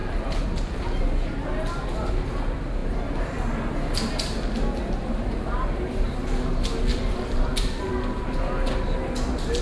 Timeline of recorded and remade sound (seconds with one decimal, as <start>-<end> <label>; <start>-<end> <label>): 0.0-6.9 recorded; 6.9-7.9 remade; 7.9-9.6 recorded